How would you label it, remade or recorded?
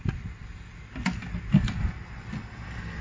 recorded